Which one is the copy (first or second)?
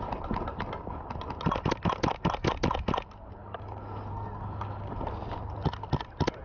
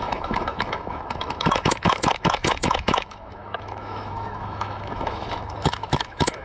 second